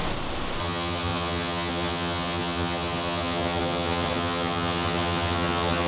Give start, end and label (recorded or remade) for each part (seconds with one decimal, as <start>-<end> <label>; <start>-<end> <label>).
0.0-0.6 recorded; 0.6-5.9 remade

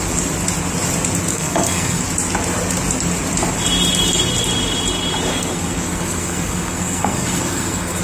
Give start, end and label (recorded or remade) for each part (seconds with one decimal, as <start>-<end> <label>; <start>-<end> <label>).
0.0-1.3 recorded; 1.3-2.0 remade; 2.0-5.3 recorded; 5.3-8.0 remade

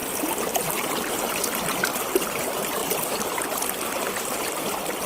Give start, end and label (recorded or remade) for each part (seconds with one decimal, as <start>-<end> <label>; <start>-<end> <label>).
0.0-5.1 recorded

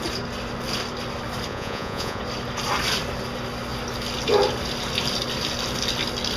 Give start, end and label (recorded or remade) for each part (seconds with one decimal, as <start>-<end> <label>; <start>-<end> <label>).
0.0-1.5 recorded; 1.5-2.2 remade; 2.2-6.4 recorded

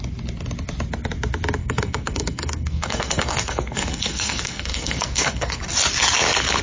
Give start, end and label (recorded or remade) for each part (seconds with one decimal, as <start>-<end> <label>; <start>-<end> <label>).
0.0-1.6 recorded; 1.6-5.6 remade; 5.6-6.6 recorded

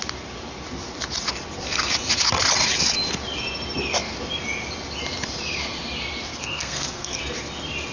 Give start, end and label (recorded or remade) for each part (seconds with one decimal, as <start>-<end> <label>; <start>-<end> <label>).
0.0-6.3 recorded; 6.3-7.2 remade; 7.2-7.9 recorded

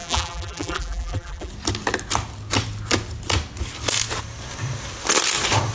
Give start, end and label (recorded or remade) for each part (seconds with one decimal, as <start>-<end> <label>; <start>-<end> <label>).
0.0-1.5 remade; 1.5-5.7 recorded

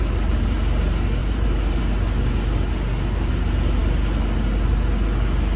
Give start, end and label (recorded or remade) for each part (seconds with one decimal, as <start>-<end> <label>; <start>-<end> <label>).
0.0-1.2 recorded; 1.2-1.8 remade; 1.8-5.6 recorded